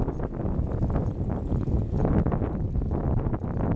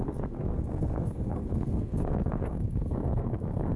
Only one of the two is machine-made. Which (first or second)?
second